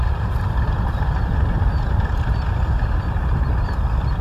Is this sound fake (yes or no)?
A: no